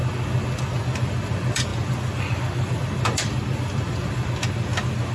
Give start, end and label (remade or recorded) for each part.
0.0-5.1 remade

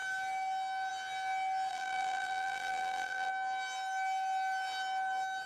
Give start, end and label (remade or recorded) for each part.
0.0-1.7 recorded; 1.7-3.3 remade; 3.3-5.5 recorded

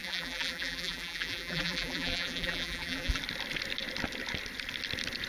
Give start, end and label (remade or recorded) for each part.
0.0-3.2 remade; 3.2-5.3 recorded